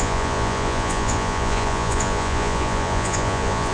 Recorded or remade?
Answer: remade